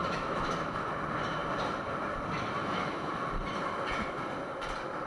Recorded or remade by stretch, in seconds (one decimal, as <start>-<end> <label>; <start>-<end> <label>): 0.0-0.9 remade; 0.9-2.6 recorded; 2.6-3.1 remade; 3.1-5.1 recorded

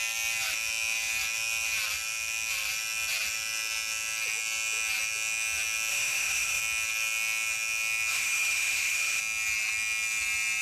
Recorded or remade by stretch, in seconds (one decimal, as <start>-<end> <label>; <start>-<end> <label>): 0.0-5.9 recorded; 5.9-6.6 remade; 6.6-8.1 recorded; 8.1-9.2 remade; 9.2-10.6 recorded

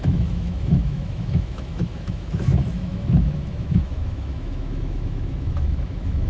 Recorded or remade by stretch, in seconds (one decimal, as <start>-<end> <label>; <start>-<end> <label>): 0.0-6.3 remade

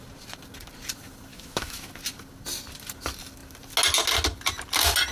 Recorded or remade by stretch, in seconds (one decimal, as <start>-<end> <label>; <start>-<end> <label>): 0.0-1.3 recorded; 1.3-1.9 remade; 1.9-5.1 recorded

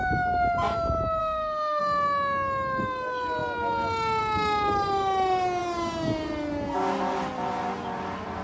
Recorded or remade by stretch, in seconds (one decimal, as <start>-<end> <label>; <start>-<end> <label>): 0.0-1.2 recorded; 1.2-1.8 remade; 1.8-8.4 recorded

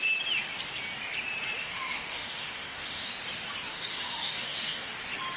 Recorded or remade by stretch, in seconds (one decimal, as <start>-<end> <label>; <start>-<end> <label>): 0.0-1.6 recorded; 1.6-3.1 remade; 3.1-3.7 recorded; 3.7-4.9 remade; 4.9-5.4 recorded

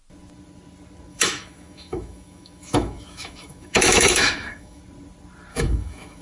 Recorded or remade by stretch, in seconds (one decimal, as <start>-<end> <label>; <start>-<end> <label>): 0.0-1.1 recorded; 1.1-4.8 remade; 4.8-5.5 recorded; 5.5-6.2 remade

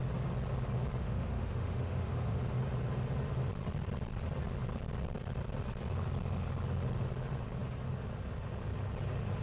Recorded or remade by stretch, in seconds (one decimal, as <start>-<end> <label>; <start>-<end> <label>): 0.0-1.0 recorded; 1.0-2.4 remade; 2.4-9.4 recorded